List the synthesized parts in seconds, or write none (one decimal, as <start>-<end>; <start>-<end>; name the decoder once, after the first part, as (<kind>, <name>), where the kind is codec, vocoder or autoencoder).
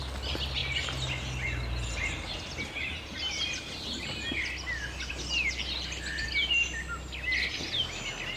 none